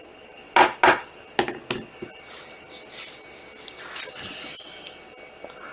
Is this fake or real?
real